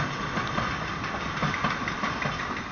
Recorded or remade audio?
recorded